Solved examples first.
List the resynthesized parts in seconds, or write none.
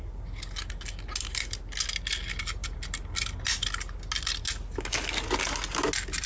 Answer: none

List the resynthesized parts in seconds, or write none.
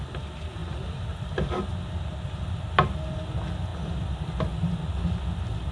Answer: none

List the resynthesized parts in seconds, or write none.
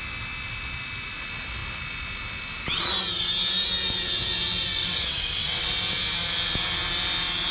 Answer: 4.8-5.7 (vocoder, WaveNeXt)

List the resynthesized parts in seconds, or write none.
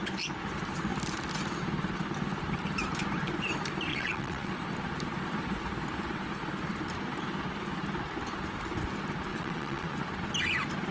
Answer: 3.9-4.5 (vocoder, WaveNeXt); 9.3-10.0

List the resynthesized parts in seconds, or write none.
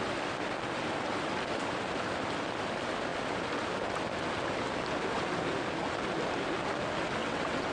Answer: 7.2-7.7 (vocoder, WaveNeXt)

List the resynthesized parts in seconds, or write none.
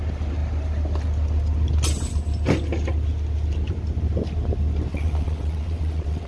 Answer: 4.9-6.3 (vocoder, WaveNeXt)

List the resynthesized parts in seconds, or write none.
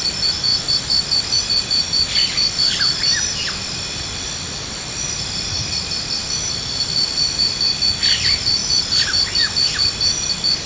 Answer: none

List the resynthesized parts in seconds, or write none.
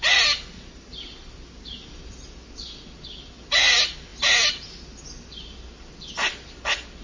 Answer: none